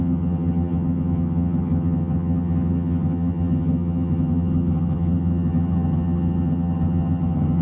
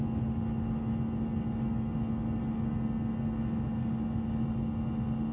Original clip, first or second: second